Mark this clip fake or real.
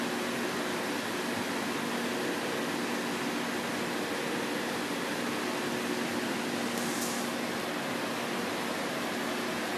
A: real